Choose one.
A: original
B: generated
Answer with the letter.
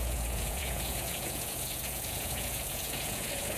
B